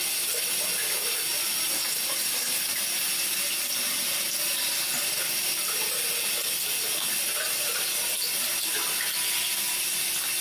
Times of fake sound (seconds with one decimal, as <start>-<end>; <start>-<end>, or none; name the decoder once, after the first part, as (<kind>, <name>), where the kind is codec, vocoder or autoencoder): none